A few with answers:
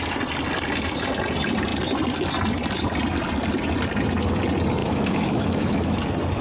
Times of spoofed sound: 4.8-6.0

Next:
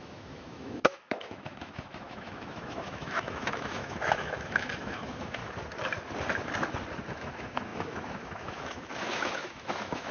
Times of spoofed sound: 0.0-5.4; 7.1-10.1

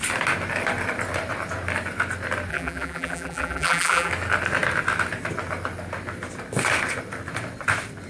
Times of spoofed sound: 2.5-4.1

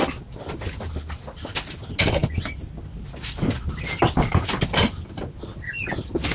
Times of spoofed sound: none

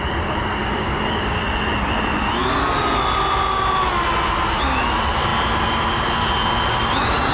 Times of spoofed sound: 0.6-1.4